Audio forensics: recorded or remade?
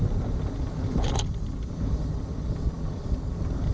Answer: remade